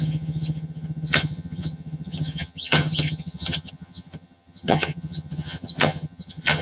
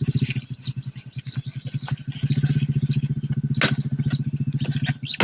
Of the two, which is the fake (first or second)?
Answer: first